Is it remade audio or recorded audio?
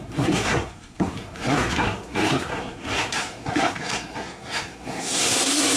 remade